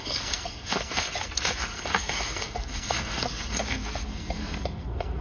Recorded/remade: remade